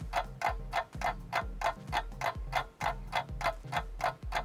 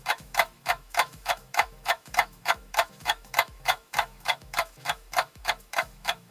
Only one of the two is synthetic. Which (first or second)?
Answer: second